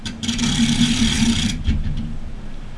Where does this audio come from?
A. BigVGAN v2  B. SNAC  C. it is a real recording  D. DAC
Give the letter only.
A